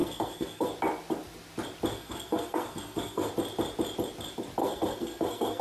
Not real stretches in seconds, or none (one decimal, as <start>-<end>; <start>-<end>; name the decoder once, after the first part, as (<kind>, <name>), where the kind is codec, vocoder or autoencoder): 0.0-0.7 (codec, SNAC); 1.9-3.3; 4.6-5.6